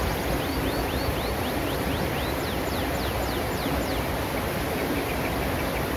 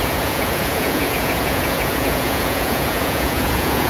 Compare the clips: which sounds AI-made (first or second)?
second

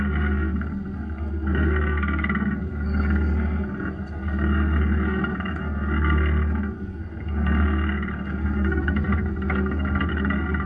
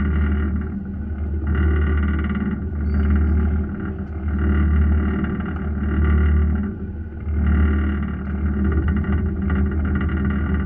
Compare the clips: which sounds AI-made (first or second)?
first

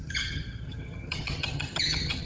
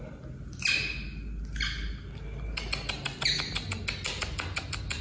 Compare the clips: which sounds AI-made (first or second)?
first